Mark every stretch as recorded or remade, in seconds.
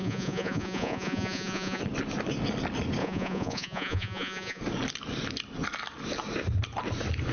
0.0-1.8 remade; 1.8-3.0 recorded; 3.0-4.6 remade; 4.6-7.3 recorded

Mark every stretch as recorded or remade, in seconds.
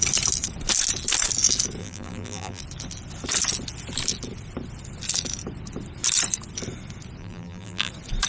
0.0-1.8 recorded; 1.8-2.6 remade; 2.6-7.2 recorded; 7.2-7.9 remade; 7.9-8.3 recorded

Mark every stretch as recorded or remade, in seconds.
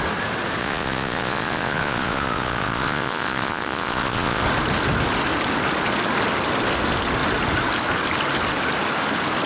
0.0-0.6 recorded; 0.6-4.4 remade; 4.4-9.5 recorded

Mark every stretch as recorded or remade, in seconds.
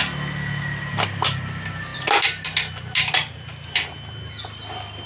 0.0-5.1 recorded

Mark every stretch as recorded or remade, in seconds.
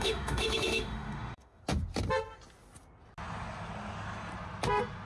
0.0-1.6 remade; 1.6-5.1 recorded